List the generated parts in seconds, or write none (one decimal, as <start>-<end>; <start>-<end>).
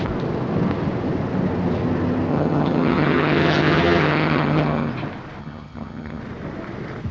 2.3-4.9; 5.4-6.2